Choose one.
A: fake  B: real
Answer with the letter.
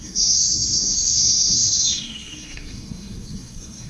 A